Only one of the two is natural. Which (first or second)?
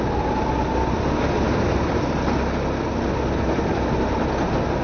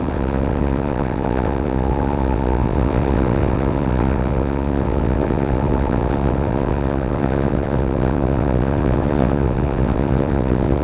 first